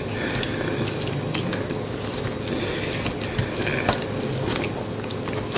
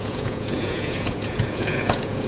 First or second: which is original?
first